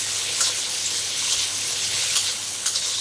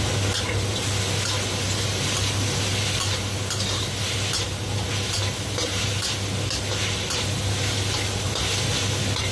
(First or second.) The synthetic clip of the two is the first